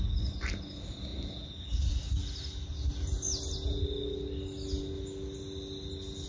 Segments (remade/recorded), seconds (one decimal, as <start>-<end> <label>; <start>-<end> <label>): 0.0-6.3 recorded